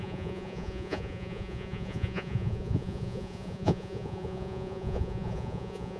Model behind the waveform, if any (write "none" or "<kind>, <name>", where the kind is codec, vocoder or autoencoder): vocoder, Vocos